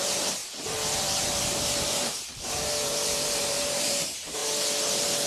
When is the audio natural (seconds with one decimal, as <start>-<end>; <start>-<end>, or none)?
4.4-5.3